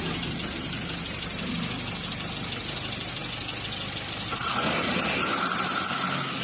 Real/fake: real